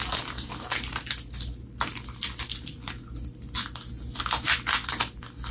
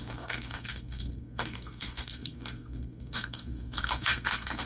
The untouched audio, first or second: first